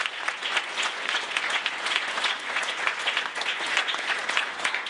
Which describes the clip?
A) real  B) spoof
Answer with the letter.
B